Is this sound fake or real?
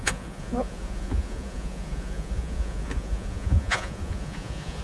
fake